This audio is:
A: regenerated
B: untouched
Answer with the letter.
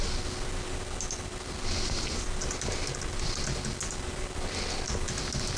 B